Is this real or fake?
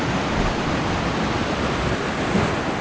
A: real